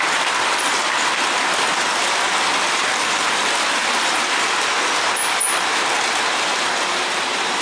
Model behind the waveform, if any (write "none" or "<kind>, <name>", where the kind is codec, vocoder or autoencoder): none